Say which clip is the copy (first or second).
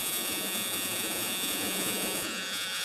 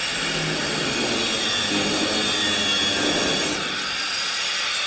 first